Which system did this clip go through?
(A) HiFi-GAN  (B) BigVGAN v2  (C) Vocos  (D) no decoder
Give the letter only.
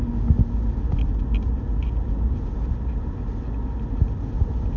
D